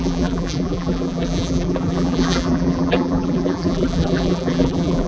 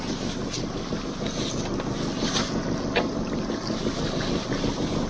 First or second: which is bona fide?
second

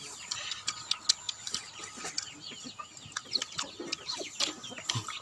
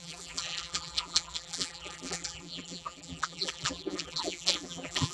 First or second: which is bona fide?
first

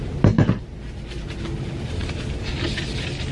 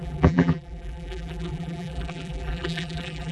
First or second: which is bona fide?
first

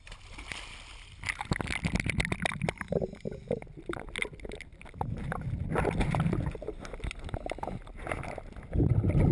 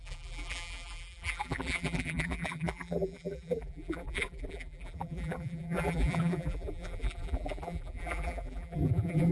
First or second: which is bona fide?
first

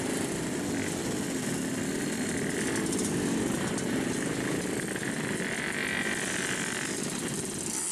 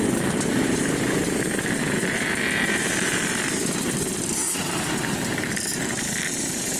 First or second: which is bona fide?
first